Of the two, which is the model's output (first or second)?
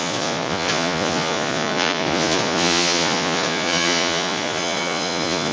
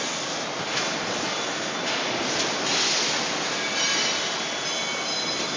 first